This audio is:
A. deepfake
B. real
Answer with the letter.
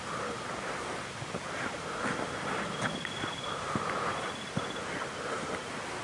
B